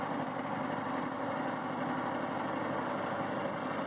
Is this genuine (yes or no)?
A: yes